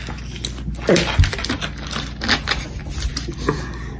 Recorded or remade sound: recorded